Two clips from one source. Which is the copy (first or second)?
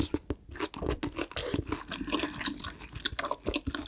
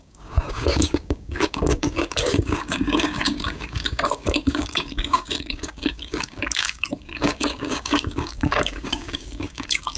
second